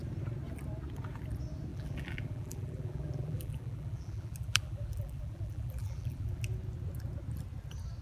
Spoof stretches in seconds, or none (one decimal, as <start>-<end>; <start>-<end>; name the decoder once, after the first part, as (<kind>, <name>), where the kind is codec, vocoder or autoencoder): 1.7-6.4 (vocoder, BigVGAN v2)